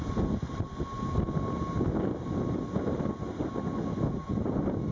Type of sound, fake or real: real